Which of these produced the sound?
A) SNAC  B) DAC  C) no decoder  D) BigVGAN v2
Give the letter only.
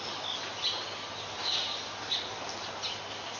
C